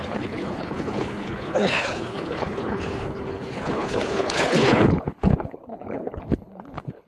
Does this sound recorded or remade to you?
remade